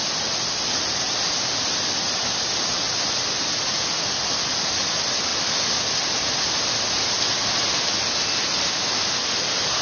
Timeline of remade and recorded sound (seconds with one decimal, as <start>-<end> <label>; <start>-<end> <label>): 0.0-9.8 recorded